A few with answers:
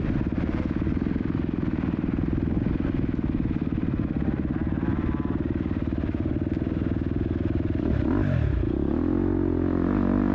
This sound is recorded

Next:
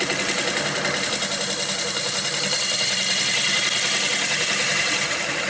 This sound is recorded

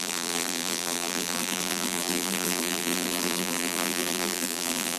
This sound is remade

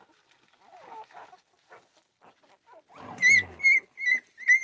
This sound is recorded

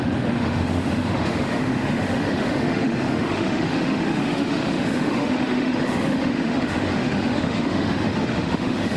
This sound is remade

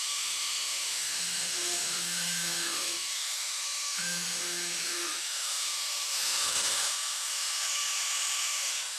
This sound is remade